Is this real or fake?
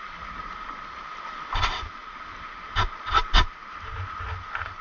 real